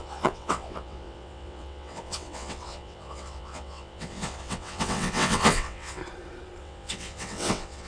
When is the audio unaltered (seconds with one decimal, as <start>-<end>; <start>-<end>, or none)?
6.0-6.6